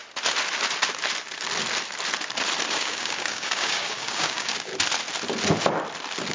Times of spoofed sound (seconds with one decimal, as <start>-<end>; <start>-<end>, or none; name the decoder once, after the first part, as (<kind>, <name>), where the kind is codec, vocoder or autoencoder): 2.7-4.7 (codec, DAC)